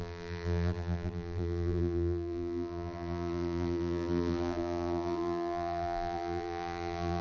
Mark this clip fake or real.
fake